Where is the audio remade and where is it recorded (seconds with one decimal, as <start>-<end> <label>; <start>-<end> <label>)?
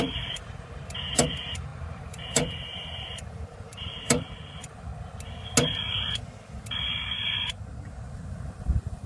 0.0-4.9 remade; 4.9-8.0 recorded; 8.0-9.1 remade